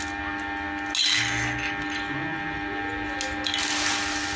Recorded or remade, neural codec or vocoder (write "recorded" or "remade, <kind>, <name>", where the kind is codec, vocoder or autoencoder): recorded